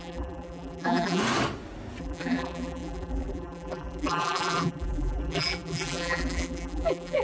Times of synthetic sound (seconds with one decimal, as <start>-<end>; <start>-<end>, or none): 0.0-1.2; 2.0-7.2